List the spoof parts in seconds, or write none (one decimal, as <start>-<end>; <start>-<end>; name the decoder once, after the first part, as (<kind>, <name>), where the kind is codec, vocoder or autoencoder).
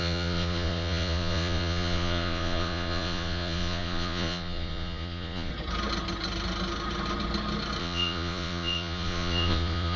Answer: 0.0-5.5 (vocoder, Vocos); 7.8-10.0